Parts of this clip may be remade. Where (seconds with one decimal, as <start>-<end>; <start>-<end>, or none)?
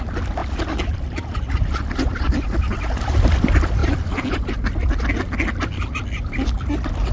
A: 0.4-2.8; 3.8-4.5